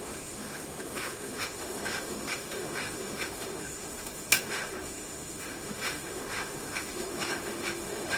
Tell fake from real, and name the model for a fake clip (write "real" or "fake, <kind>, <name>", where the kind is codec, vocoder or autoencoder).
fake, autoencoder, DAC-VAE